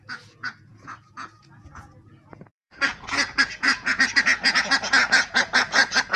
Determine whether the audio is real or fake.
fake